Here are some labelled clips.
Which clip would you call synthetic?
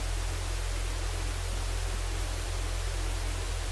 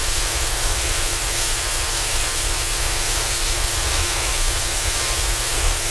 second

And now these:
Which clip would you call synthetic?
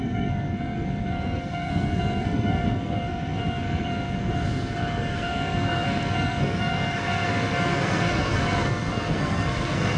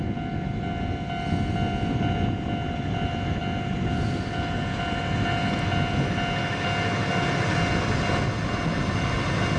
first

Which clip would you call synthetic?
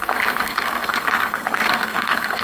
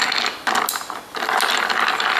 first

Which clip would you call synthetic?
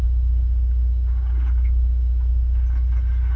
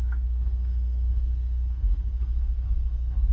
second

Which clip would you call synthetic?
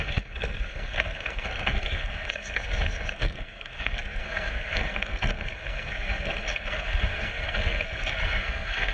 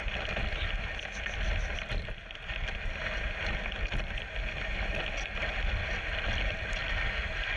first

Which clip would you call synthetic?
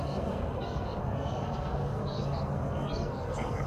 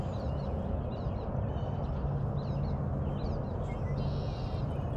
first